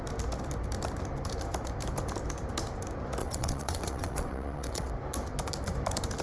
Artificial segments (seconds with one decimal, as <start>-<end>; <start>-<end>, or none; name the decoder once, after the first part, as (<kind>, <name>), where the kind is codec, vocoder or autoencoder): 3.2-4.9 (vocoder, WaveNeXt)